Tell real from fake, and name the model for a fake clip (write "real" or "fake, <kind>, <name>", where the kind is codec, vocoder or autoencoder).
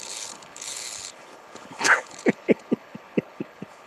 fake, codec, HILCodec